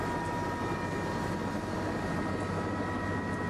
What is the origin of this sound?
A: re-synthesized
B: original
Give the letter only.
B